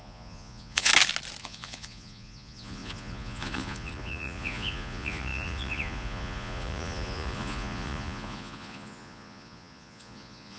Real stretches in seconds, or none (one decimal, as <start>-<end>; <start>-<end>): 0.9-1.4

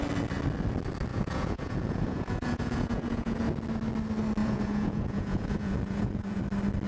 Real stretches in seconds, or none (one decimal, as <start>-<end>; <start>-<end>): 0.0-1.1; 3.4-4.4; 6.4-6.9

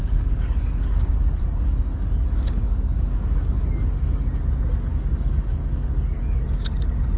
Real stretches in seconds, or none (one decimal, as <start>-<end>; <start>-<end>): 4.3-4.9; 6.4-7.2

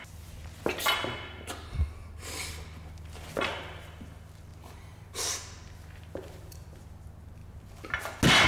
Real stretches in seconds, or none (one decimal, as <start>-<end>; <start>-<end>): 0.0-4.5; 6.7-8.5

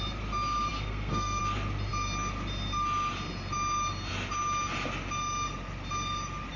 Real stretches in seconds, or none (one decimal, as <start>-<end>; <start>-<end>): 0.0-0.7; 1.4-6.6

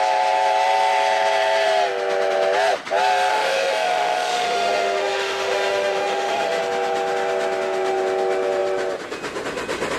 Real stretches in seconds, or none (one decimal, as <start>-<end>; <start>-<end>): 0.0-3.3; 6.6-10.0

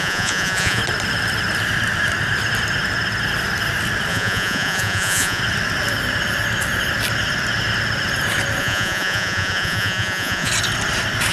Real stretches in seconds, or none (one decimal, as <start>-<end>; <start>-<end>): 0.8-4.1; 5.4-8.6; 10.5-11.3